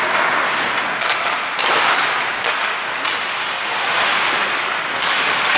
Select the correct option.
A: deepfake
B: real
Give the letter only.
B